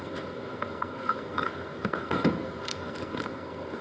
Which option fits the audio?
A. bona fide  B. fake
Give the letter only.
B